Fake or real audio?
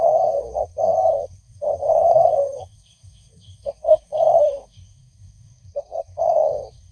fake